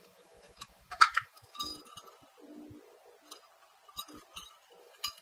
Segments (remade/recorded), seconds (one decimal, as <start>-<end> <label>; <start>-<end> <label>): 0.0-1.7 remade; 1.7-4.8 recorded; 4.8-5.2 remade